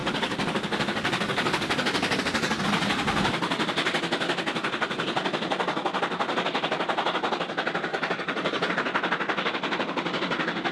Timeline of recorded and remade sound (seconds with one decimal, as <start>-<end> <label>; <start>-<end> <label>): 0.0-2.2 remade; 2.2-7.9 recorded; 7.9-8.7 remade; 8.7-10.7 recorded